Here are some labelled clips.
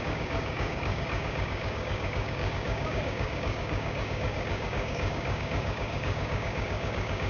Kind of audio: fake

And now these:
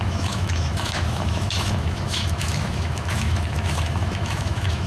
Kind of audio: fake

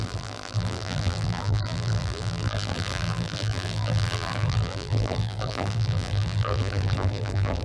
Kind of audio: fake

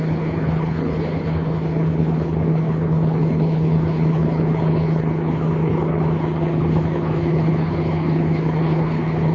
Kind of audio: fake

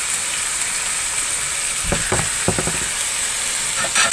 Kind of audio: real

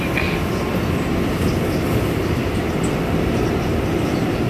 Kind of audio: real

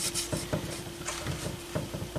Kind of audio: fake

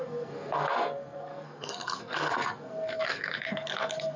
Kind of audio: fake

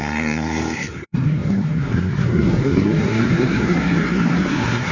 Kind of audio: fake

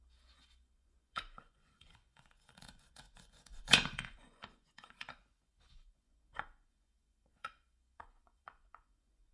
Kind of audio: fake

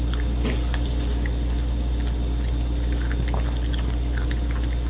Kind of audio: real